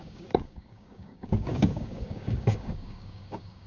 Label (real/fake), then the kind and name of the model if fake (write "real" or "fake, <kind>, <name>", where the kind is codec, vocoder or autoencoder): fake, codec, DAC